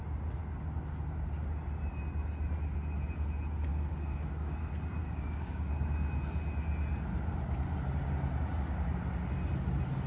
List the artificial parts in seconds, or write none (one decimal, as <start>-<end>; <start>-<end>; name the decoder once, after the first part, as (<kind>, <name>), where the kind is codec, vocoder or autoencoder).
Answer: 3.7-4.6 (codec, DAC); 5.0-5.7